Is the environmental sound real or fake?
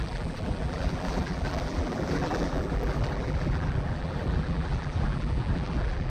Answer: fake